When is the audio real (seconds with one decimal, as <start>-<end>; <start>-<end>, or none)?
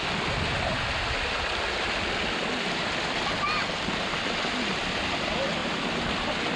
0.0-6.6